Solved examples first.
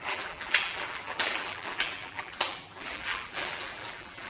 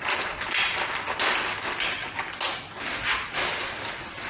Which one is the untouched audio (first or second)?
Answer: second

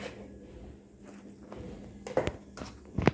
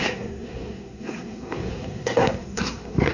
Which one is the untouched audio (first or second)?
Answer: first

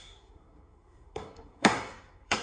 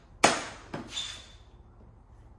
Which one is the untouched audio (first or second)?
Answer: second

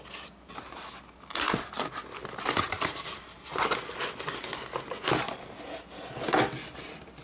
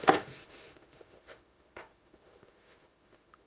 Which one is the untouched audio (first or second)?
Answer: first